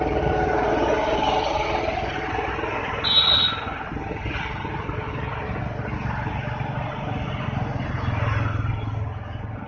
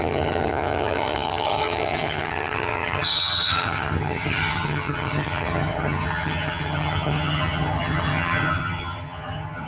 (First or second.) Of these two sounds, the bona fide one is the first